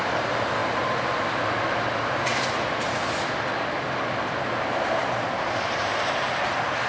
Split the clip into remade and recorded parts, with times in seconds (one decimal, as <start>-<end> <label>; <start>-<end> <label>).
0.0-6.9 recorded

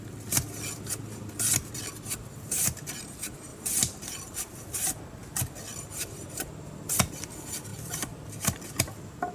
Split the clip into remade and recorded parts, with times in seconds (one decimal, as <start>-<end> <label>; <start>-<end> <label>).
0.0-3.5 recorded; 3.5-5.0 remade; 5.0-5.7 recorded; 5.7-6.3 remade; 6.3-7.7 recorded; 7.7-8.7 remade; 8.7-9.3 recorded

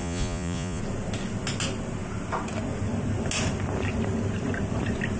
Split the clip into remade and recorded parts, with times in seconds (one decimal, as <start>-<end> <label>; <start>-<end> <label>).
0.0-0.8 remade; 0.8-5.2 recorded

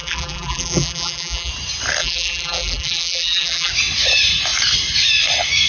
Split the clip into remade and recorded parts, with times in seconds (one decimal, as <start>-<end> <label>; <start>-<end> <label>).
0.0-1.5 remade; 1.5-2.0 recorded; 2.0-3.7 remade; 3.7-5.7 recorded

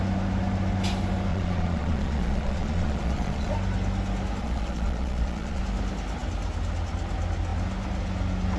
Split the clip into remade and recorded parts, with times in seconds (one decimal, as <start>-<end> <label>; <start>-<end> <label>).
0.0-1.3 recorded; 1.3-3.5 remade; 3.5-4.4 recorded; 4.4-5.6 remade; 5.6-8.6 recorded